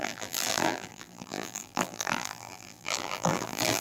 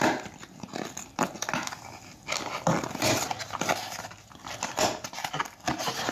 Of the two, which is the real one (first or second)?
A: second